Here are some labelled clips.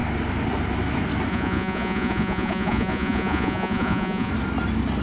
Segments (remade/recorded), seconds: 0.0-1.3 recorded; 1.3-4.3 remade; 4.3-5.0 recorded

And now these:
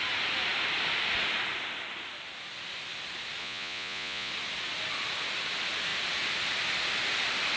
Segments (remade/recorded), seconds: 0.0-3.4 recorded; 3.4-4.3 remade; 4.3-7.6 recorded